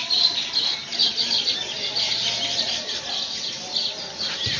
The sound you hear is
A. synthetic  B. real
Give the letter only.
B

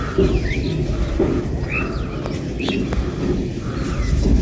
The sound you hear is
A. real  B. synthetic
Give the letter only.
A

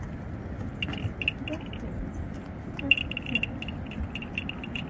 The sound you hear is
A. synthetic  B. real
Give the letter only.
B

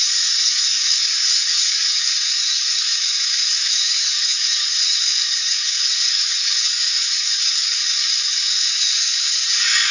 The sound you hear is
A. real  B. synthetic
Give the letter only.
B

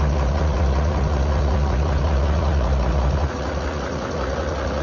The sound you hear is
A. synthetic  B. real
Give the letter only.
A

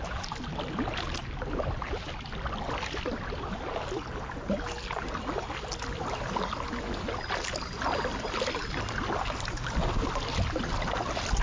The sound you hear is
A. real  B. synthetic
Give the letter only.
A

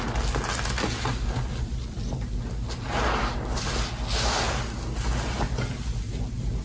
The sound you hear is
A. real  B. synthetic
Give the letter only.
A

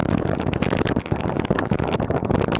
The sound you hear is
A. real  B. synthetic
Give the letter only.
B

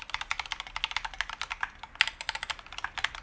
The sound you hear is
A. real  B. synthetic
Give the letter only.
A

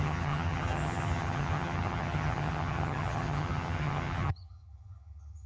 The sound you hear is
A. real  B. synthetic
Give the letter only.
B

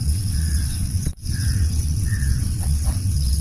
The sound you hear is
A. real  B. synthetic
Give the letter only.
B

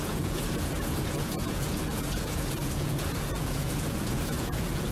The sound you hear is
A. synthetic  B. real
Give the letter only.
A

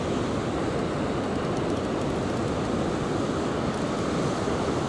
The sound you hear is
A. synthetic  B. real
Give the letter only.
B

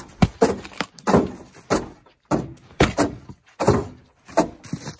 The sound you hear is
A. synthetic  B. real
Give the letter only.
B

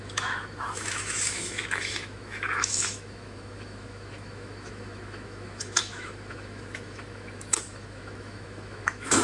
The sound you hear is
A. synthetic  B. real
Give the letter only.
A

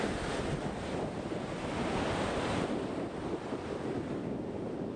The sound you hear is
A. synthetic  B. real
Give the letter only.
B